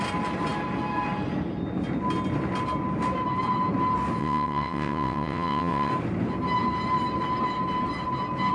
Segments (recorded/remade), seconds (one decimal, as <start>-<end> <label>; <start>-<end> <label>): 0.0-4.2 recorded; 4.2-5.9 remade; 5.9-8.5 recorded